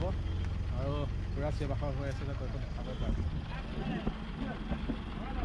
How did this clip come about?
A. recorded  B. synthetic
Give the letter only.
A